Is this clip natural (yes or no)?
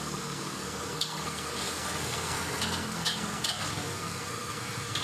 no